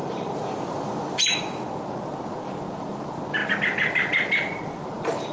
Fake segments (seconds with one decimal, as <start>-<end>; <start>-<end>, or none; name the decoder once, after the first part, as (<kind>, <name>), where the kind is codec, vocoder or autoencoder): 0.0-1.3 (vocoder, BigVGAN v2)